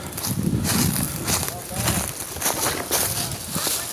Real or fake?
real